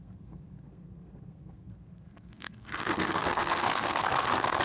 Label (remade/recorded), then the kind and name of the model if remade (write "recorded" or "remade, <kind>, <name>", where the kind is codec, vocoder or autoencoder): remade, codec, SNAC